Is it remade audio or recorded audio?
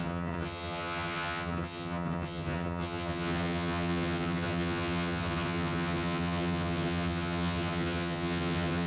remade